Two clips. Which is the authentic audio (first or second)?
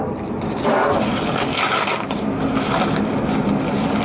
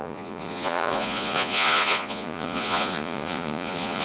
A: first